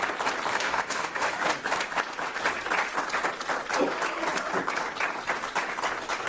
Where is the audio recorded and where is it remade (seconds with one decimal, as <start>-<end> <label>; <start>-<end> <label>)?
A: 0.0-0.5 recorded; 0.5-1.4 remade; 1.4-6.3 recorded

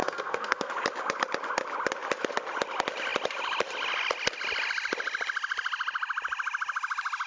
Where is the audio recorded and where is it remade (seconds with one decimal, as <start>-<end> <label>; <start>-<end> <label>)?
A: 0.0-0.7 remade; 0.7-7.3 recorded

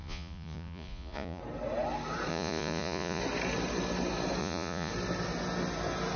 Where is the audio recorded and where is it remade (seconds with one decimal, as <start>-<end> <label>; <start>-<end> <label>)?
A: 0.0-1.4 remade; 1.4-2.3 recorded; 2.3-3.2 remade; 3.2-4.4 recorded; 4.4-4.9 remade; 4.9-6.2 recorded

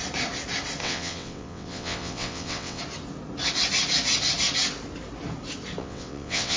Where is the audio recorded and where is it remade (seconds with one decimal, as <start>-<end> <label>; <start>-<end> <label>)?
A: 0.0-0.8 recorded; 0.8-2.8 remade; 2.8-5.8 recorded; 5.8-6.6 remade

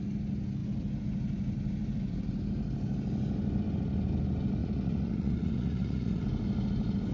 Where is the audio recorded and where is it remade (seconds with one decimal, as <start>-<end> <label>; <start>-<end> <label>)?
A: 0.0-4.6 recorded; 4.6-6.2 remade; 6.2-7.1 recorded

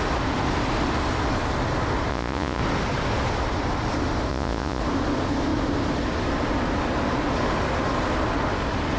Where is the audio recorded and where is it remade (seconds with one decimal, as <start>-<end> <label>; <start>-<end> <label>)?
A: 0.0-2.1 recorded; 2.1-2.6 remade; 2.6-4.3 recorded; 4.3-4.8 remade; 4.8-9.0 recorded

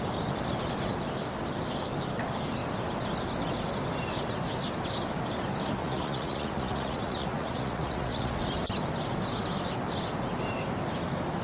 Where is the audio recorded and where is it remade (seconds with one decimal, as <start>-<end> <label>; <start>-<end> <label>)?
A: 0.0-5.8 recorded; 5.8-8.3 remade; 8.3-11.4 recorded